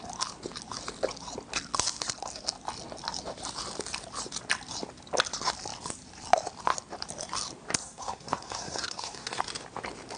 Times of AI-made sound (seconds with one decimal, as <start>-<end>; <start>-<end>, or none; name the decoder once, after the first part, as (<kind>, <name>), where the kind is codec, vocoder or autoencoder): 7.8-9.4 (codec, SNAC)